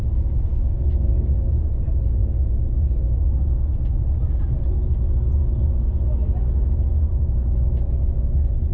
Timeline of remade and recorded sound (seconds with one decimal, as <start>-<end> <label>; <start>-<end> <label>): 0.0-0.5 recorded; 0.5-1.7 remade; 1.7-8.7 recorded